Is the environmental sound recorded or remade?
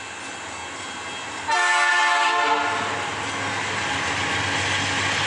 recorded